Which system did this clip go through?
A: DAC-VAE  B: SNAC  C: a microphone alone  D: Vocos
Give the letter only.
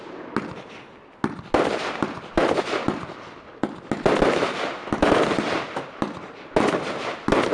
C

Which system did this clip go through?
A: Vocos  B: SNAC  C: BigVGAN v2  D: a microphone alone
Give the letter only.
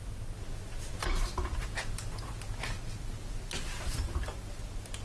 D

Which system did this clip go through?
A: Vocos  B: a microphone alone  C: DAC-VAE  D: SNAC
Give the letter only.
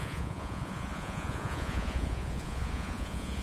A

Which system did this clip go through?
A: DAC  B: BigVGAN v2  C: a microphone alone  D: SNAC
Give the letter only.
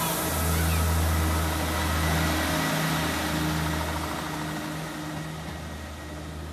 C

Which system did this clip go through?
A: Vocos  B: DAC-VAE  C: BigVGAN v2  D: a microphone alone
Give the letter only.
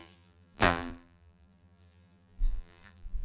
C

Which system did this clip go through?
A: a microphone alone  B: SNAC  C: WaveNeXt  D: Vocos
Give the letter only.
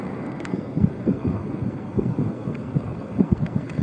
B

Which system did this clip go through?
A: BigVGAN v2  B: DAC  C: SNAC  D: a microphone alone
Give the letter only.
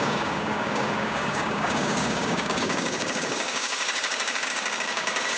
B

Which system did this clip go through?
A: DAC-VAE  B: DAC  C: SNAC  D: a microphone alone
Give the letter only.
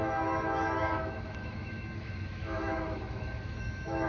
A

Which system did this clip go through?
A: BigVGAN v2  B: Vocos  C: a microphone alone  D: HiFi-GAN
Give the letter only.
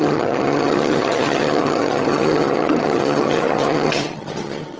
D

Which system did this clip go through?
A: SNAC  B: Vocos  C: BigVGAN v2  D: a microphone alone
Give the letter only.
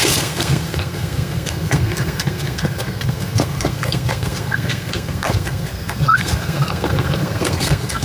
A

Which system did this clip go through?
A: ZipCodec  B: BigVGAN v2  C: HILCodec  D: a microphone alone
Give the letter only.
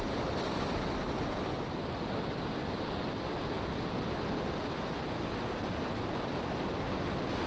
D